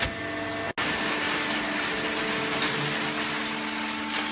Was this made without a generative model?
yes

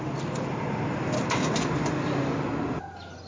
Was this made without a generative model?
yes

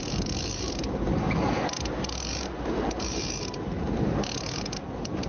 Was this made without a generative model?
no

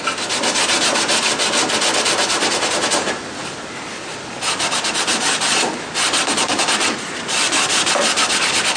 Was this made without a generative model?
yes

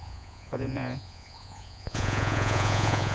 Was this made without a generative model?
no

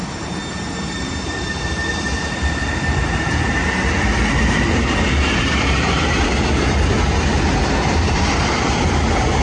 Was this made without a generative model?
no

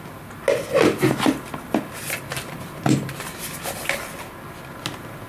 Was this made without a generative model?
yes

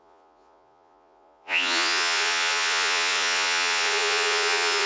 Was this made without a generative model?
no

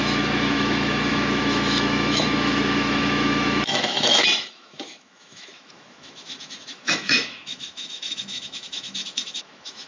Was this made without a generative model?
no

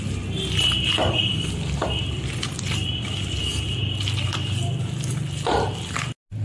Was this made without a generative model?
yes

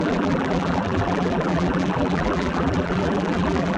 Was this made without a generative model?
no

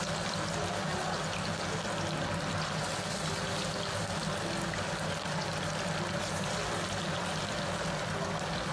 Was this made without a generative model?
yes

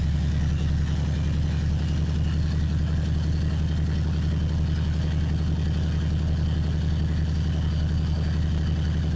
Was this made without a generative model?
yes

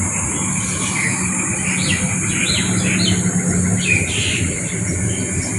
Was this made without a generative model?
yes